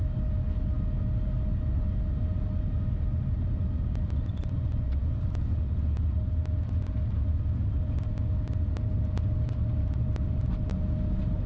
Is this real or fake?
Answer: real